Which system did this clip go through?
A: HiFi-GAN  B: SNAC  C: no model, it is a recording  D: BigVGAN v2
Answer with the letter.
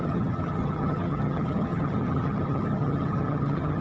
A